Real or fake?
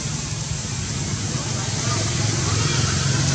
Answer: real